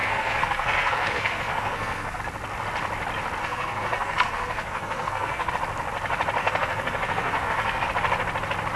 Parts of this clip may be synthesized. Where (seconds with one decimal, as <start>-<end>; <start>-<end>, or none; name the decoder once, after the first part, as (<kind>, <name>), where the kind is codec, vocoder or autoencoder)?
0.0-2.2 (codec, SNAC); 3.4-5.5; 6.4-7.9